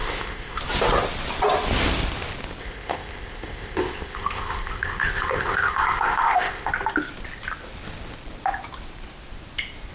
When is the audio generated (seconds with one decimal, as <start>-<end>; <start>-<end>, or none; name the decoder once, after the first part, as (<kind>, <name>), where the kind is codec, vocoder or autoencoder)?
0.0-0.6 (codec, ZipCodec); 2.6-6.7